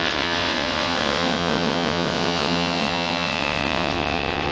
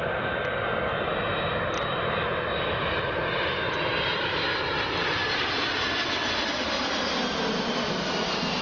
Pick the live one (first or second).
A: second